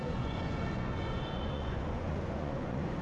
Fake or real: fake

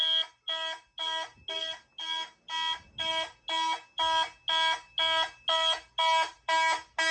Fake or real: real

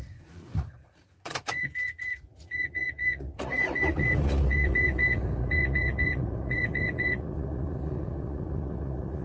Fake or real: fake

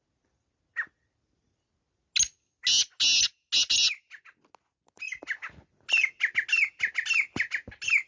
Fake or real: real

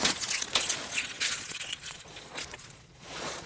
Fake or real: fake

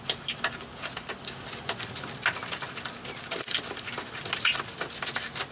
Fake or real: real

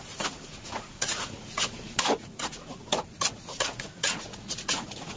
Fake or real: fake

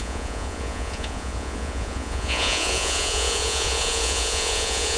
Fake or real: fake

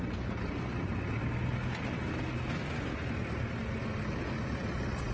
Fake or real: real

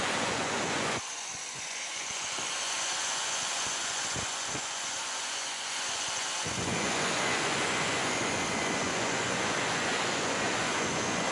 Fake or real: fake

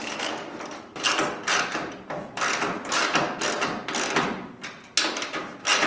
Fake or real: real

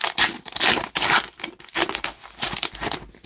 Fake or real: real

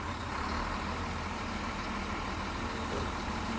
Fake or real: real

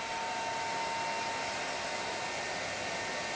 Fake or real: real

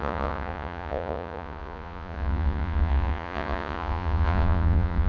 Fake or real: fake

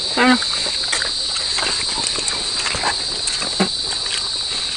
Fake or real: real